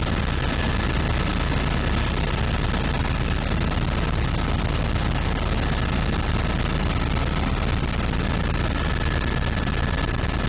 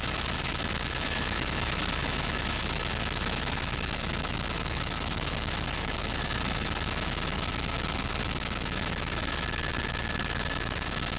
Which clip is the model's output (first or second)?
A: second